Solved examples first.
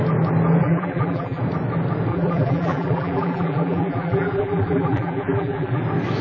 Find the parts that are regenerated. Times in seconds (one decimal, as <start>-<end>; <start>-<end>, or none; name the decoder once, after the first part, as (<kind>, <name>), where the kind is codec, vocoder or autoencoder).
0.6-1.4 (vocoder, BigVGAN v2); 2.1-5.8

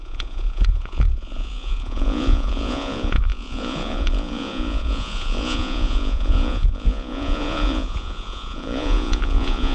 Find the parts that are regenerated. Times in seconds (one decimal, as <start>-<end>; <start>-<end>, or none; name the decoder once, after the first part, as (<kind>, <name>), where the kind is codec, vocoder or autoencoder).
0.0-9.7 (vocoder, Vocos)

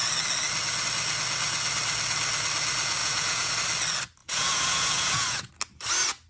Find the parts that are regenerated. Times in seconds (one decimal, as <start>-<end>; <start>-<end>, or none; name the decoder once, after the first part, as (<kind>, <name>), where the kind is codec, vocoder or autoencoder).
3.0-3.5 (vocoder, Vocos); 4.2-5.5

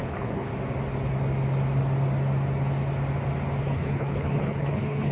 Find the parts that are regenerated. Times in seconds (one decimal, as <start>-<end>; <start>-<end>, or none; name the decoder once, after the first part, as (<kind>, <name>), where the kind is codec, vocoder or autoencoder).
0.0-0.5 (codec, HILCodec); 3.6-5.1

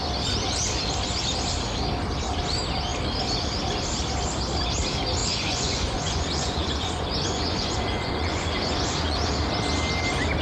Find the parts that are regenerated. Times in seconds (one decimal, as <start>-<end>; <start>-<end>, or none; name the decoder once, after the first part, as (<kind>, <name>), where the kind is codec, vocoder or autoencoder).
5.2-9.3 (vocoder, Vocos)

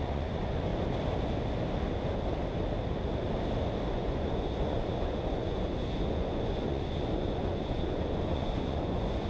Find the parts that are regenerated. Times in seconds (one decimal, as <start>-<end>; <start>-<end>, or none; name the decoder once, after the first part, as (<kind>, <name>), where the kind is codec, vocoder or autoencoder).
0.0-0.7 (vocoder, Vocos); 3.9-9.3

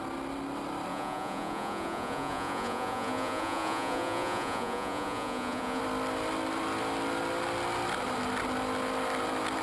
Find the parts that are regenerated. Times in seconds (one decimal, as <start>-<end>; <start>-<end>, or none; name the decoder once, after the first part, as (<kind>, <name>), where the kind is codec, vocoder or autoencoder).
0.9-5.8 (vocoder, Vocos)

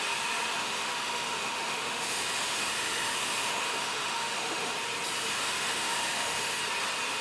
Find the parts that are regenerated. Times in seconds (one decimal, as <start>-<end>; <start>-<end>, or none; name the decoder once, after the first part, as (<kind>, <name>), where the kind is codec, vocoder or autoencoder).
0.6-4.7 (autoencoder, DAC-VAE); 5.3-6.6